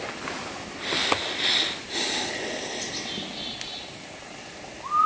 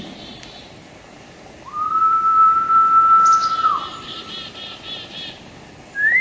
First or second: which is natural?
first